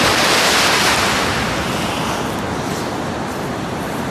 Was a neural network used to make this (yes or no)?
no